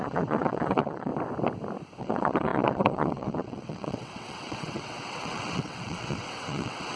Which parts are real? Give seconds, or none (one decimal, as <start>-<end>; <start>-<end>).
1.1-2.0